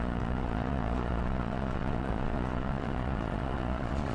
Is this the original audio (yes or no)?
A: no